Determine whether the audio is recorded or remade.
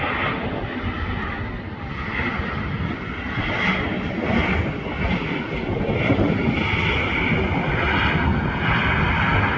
recorded